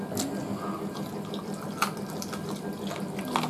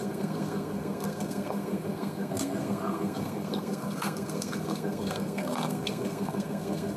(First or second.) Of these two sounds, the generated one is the second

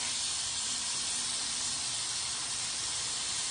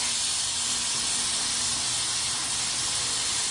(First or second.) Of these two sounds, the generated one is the first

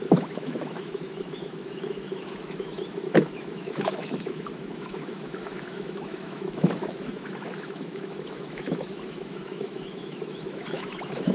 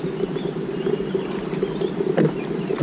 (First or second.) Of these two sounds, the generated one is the first